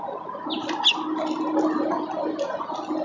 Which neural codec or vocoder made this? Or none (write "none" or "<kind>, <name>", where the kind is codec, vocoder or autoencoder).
none